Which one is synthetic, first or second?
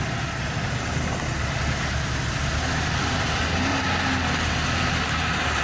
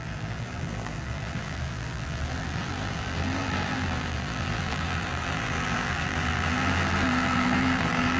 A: second